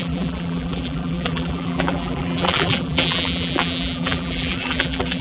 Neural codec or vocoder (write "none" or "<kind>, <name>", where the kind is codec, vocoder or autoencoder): vocoder, BigVGAN v2